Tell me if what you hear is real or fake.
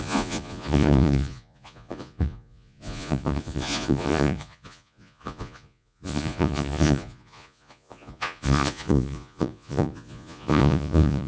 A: fake